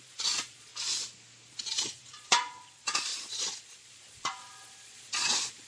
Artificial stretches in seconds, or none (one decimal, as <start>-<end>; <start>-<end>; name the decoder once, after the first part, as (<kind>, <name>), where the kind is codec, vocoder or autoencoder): 0.0-0.7 (vocoder, Vocos); 1.5-5.7